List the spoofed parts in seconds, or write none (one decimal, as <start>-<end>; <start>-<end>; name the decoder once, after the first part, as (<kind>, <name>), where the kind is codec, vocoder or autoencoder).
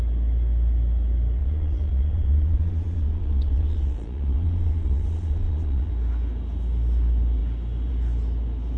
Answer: 1.4-5.9 (vocoder, Vocos)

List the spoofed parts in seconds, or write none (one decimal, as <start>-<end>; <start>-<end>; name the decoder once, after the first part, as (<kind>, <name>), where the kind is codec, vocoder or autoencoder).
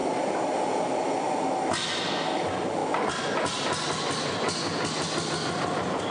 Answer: none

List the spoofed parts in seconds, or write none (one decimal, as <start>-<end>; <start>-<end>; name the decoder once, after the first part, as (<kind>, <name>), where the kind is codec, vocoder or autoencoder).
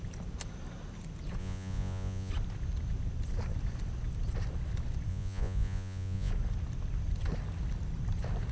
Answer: 1.4-2.3 (vocoder, Vocos); 5.1-6.3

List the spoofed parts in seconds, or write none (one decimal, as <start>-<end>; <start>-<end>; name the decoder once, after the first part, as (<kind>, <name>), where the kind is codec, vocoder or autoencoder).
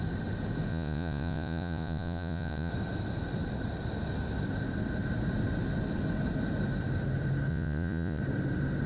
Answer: 0.7-2.7 (vocoder, Vocos); 7.5-8.2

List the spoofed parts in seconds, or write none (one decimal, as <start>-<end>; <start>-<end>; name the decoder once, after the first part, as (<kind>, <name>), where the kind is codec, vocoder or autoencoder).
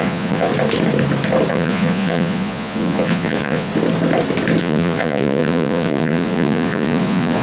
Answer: 0.0-0.5 (vocoder, Vocos); 1.5-3.7; 4.6-7.4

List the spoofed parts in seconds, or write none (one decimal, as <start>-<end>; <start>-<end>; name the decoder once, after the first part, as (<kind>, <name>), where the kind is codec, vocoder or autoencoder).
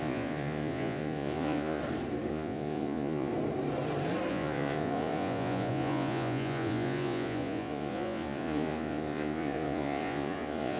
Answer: 0.0-1.8 (vocoder, Vocos); 2.3-3.3; 4.3-10.8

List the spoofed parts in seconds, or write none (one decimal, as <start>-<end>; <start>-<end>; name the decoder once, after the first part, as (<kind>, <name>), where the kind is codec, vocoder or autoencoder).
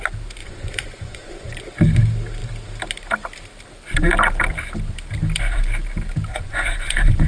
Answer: 0.4-1.6 (vocoder, Vocos); 6.3-7.3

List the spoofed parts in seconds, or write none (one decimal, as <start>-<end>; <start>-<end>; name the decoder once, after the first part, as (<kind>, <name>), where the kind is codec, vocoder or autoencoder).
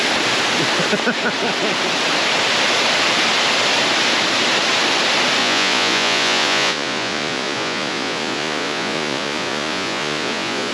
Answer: 5.4-10.7 (vocoder, Vocos)